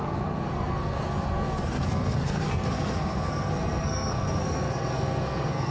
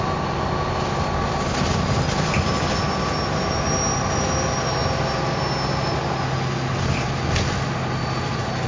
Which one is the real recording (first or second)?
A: second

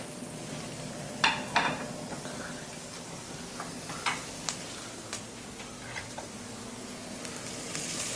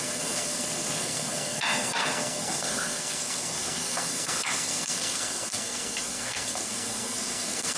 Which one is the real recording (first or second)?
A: first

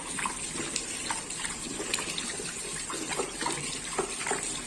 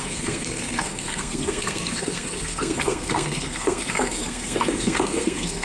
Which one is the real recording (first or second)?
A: first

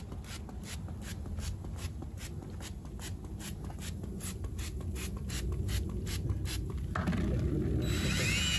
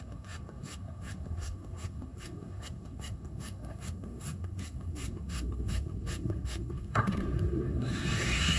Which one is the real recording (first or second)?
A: first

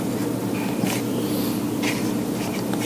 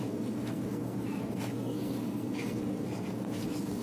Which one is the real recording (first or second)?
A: first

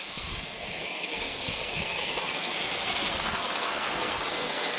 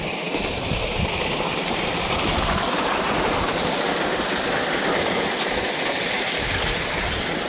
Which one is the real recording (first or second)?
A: second